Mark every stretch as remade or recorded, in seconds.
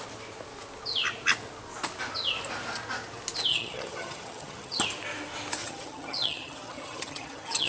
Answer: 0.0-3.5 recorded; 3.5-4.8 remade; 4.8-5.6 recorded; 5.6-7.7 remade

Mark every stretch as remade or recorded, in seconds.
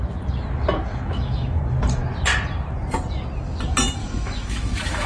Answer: 0.0-0.9 recorded; 0.9-1.6 remade; 1.6-4.0 recorded; 4.0-5.1 remade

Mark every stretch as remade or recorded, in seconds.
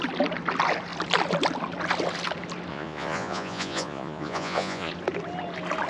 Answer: 0.0-2.7 recorded; 2.7-4.9 remade; 4.9-5.9 recorded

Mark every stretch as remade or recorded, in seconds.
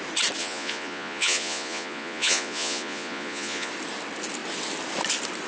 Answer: 0.0-0.4 recorded; 0.4-3.7 remade; 3.7-5.5 recorded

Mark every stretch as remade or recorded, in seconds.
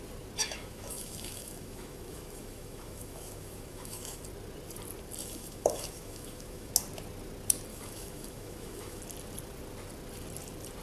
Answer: 0.0-0.4 recorded; 0.4-4.2 remade; 4.2-5.2 recorded; 5.2-6.7 remade; 6.7-7.7 recorded; 7.7-9.0 remade; 9.0-10.8 recorded